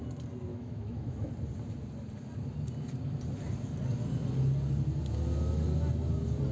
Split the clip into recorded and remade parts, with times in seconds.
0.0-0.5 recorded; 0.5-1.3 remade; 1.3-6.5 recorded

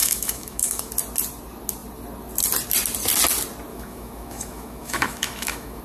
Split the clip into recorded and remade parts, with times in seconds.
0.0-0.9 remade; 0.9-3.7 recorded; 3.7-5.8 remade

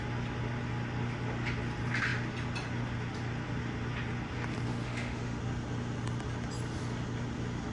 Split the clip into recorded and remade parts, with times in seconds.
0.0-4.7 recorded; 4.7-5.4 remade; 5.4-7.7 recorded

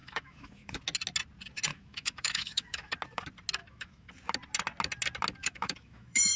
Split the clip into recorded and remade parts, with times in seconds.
0.0-0.8 remade; 0.8-1.7 recorded; 1.7-2.9 remade; 2.9-3.6 recorded; 3.6-4.1 remade; 4.1-5.4 recorded; 5.4-6.4 remade

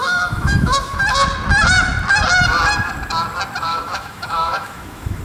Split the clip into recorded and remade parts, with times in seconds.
0.0-1.0 remade; 1.0-3.7 recorded; 3.7-5.2 remade

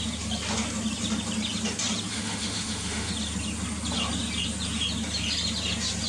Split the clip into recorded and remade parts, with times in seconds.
0.0-2.1 recorded; 2.1-3.1 remade; 3.1-6.1 recorded